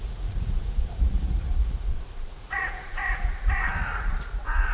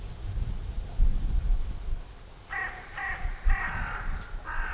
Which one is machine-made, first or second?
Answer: first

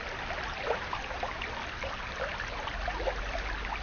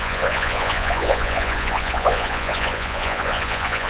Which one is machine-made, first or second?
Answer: second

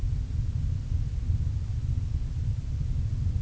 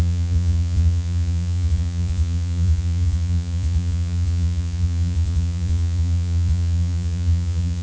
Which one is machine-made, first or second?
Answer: second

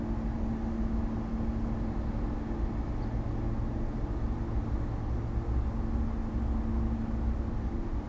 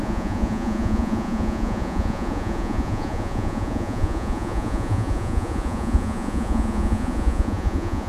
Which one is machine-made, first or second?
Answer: second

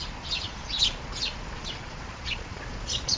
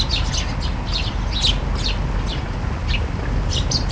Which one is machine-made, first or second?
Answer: first